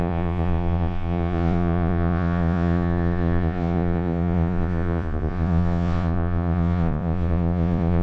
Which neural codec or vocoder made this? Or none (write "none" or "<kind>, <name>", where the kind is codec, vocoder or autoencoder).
vocoder, Vocos